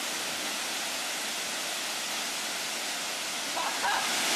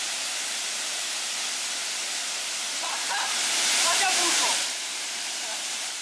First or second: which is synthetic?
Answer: second